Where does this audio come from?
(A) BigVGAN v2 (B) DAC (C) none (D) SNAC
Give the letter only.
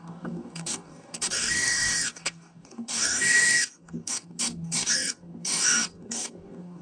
B